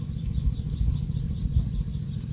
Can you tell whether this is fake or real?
fake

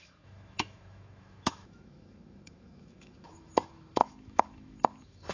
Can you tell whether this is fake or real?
fake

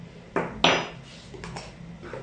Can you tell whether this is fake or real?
real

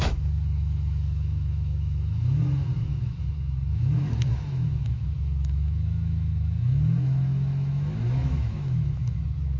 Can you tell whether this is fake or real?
fake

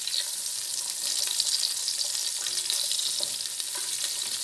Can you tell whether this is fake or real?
real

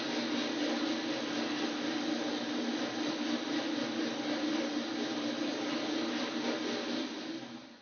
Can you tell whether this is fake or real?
real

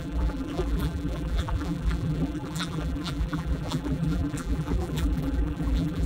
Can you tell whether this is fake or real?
fake